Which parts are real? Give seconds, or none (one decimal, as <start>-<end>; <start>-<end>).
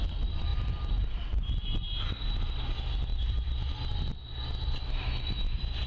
0.0-0.5; 2.4-3.1; 4.0-5.9